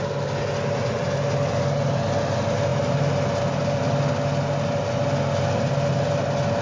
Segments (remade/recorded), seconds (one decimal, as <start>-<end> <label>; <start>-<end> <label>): 0.0-6.6 recorded